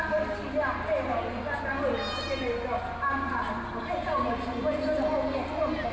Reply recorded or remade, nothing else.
recorded